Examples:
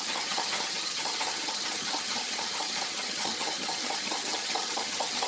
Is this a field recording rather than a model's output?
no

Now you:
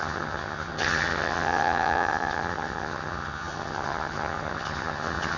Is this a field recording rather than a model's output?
no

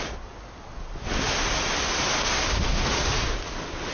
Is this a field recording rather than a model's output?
yes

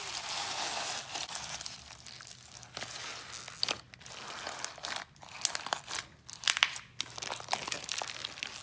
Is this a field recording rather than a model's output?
yes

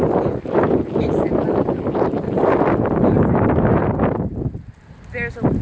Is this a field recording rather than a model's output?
yes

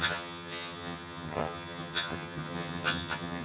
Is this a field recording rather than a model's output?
no